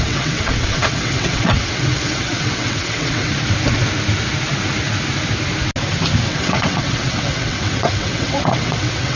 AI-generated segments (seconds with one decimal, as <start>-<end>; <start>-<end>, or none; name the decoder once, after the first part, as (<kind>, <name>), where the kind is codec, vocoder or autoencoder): 0.0-3.3 (vocoder, WaveNeXt); 6.3-9.2